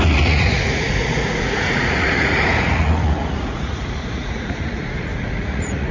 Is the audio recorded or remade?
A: remade